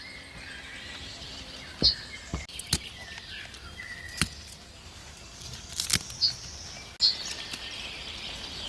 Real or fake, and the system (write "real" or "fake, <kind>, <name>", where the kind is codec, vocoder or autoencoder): real